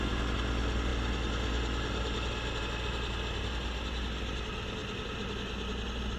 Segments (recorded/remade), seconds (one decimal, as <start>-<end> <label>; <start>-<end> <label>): 0.0-6.2 recorded